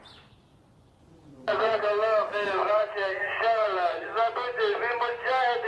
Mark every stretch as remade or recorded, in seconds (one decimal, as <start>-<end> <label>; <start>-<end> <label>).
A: 0.0-0.5 recorded; 0.5-1.8 remade; 1.8-2.2 recorded; 2.2-4.3 remade; 4.3-5.7 recorded